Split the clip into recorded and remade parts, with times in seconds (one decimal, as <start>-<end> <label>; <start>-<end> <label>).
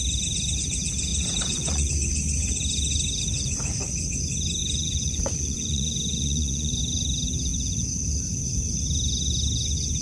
0.0-1.1 recorded; 1.1-1.9 remade; 1.9-4.6 recorded; 4.6-6.8 remade; 6.8-10.0 recorded